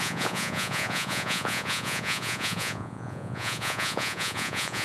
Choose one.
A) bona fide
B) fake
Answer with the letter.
B